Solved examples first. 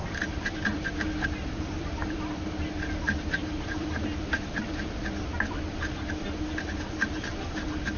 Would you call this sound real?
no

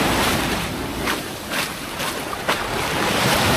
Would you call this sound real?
no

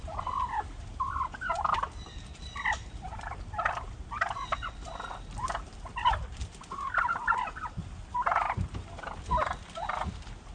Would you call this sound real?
no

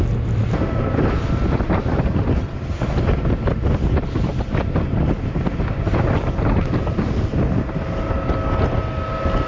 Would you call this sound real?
yes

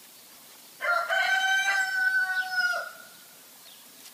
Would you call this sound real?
no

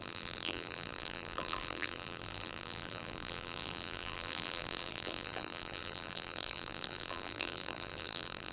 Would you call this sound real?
no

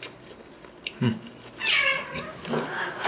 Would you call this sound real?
no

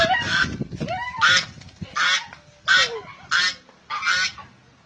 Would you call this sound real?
yes